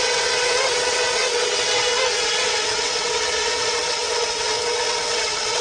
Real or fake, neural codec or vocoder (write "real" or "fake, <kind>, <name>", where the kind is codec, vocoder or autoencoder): fake, vocoder, WaveNeXt